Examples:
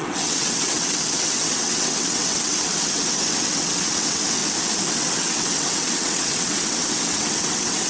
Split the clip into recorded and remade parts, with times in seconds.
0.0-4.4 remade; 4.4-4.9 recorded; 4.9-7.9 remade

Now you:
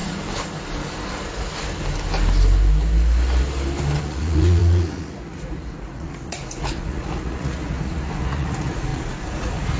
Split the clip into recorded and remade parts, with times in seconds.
0.0-4.0 recorded; 4.0-9.8 remade